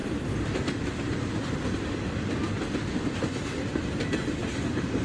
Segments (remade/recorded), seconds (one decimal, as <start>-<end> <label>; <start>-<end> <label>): 0.0-5.0 recorded